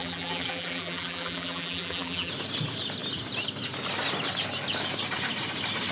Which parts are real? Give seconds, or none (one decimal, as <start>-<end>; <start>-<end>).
2.3-5.9